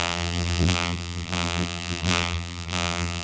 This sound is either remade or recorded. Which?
remade